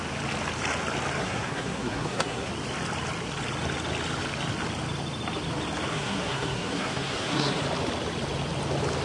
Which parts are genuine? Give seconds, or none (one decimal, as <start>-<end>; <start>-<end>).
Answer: 0.0-1.2; 2.5-5.9; 7.6-9.0

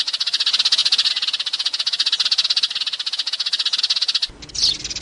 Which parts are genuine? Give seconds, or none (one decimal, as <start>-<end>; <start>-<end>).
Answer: 0.0-5.0